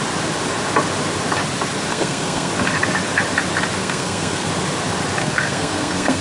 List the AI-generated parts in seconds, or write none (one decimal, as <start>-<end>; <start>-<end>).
1.9-2.5; 3.8-4.5; 5.2-6.2